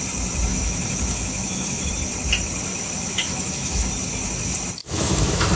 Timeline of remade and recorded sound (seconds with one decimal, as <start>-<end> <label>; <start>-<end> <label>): 0.0-0.5 recorded; 0.5-1.9 remade; 1.9-2.7 recorded; 2.7-3.9 remade; 3.9-4.8 recorded; 4.8-5.6 remade